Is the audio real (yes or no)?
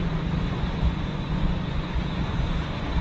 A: no